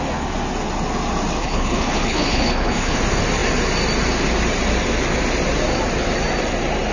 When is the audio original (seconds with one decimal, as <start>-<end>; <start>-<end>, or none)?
0.0-1.4; 3.0-6.9